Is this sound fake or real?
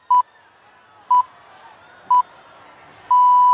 real